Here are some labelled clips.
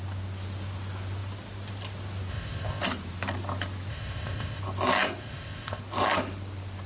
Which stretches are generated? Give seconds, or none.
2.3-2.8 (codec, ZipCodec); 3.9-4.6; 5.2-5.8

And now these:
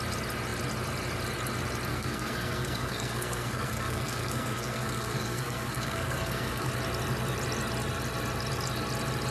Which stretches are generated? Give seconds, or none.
1.9-6.7 (codec, SNAC)

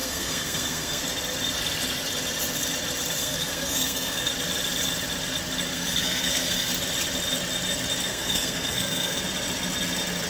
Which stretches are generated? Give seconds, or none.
0.0-1.0 (codec, SNAC); 3.2-4.3; 5.7-6.7; 8.1-9.2

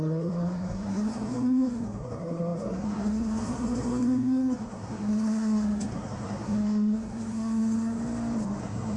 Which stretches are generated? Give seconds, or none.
0.0-8.0 (codec, SNAC); 8.6-9.0

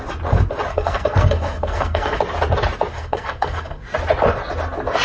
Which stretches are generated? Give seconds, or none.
0.7-2.2 (codec, SNAC); 2.9-3.8